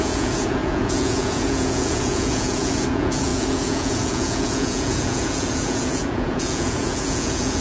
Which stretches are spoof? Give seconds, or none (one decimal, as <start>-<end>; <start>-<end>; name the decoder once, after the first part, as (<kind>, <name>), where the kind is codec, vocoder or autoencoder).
0.0-7.6 (vocoder, Vocos)